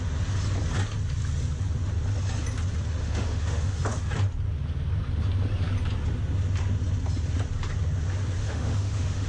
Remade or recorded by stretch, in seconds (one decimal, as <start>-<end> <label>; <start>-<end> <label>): 0.0-3.0 recorded; 3.0-3.8 remade; 3.8-8.4 recorded; 8.4-9.3 remade

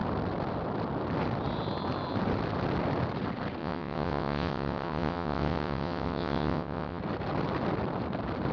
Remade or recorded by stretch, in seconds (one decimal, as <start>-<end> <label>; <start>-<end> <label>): 0.0-3.6 recorded; 3.6-7.0 remade; 7.0-8.5 recorded

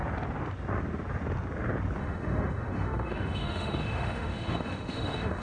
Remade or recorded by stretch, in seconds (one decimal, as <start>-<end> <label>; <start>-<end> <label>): 0.0-2.0 recorded; 2.0-5.4 remade

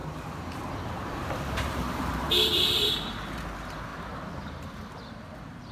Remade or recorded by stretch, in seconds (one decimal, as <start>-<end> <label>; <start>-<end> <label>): 0.0-3.4 remade; 3.4-3.9 recorded; 3.9-4.8 remade; 4.8-5.7 recorded